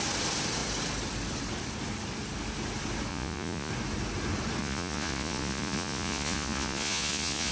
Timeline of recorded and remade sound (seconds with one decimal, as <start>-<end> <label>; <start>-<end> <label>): 0.0-3.1 recorded; 3.1-3.7 remade; 3.7-4.6 recorded; 4.6-7.5 remade